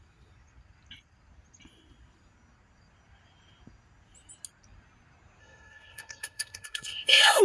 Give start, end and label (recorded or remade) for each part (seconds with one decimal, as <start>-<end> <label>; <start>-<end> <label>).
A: 0.0-5.4 recorded; 5.4-7.4 remade